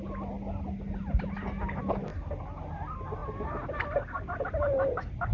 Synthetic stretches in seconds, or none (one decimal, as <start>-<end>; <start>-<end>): none

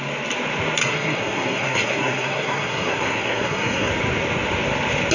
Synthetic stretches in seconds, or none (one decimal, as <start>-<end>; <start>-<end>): 0.8-3.9

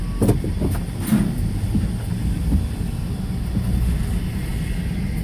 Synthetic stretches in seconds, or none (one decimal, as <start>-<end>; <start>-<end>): none

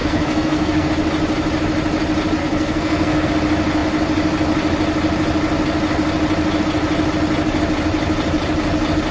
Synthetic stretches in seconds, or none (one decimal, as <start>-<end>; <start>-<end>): 0.0-0.9; 2.4-3.3